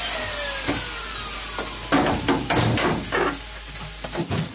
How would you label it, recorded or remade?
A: recorded